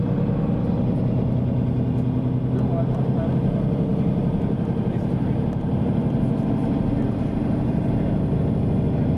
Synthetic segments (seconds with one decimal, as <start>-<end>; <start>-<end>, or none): none